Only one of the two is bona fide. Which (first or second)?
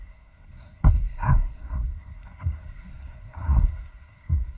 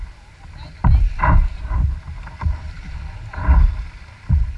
second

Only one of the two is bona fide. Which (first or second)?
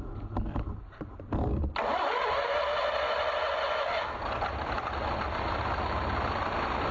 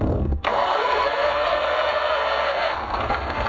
first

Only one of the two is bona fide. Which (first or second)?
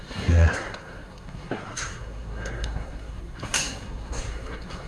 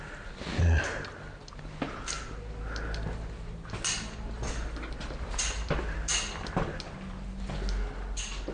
second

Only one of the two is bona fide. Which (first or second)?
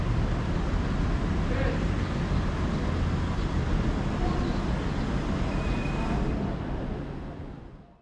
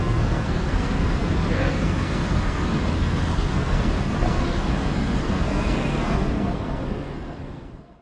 first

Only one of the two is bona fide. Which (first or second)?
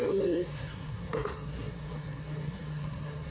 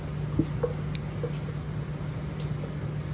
second